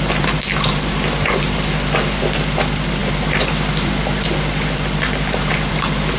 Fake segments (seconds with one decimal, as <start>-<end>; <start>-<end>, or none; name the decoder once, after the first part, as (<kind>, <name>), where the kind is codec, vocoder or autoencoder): none